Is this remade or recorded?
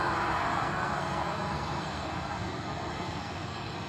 remade